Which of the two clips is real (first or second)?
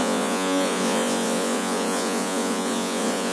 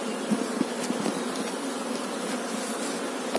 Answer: second